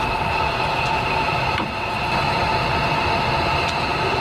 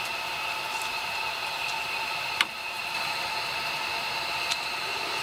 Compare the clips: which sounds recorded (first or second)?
first